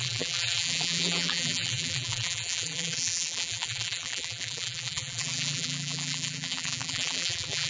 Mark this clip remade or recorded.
remade